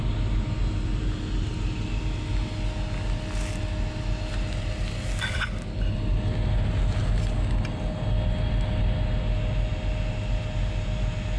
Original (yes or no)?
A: yes